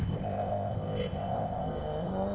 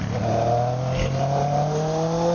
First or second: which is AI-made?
first